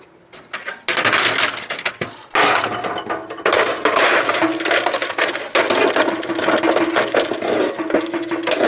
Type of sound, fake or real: real